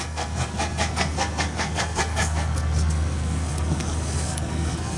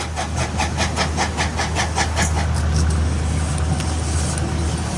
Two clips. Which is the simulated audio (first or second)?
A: first